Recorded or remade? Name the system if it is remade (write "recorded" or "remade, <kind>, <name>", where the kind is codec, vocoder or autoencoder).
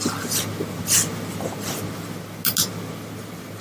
recorded